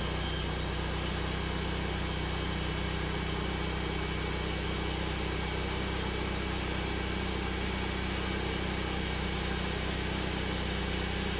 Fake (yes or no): no